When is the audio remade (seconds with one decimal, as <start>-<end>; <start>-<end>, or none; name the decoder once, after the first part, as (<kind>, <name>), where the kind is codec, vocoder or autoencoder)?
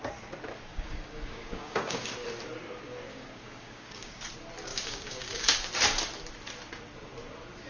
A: 0.7-2.1 (codec, DAC); 3.1-4.2; 4.7-5.7